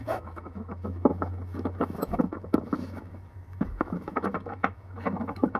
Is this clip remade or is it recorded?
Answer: remade